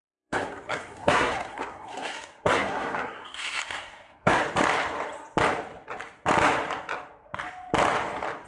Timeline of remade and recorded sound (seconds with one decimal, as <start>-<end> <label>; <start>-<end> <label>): 0.0-4.4 remade; 4.4-8.5 recorded